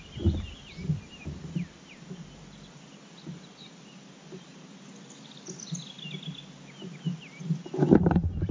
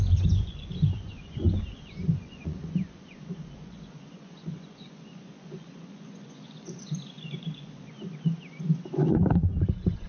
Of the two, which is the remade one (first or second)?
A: second